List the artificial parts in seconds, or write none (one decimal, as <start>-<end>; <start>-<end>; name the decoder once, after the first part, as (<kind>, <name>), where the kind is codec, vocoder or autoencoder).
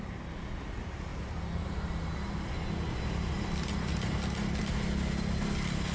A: none